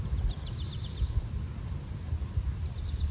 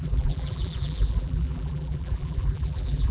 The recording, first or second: first